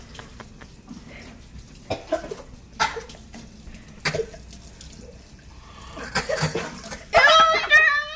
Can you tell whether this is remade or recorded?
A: recorded